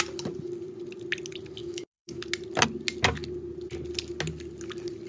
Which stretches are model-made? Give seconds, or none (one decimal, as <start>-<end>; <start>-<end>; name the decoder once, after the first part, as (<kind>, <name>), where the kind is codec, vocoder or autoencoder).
1.6-2.2 (autoencoder, DAC-VAE)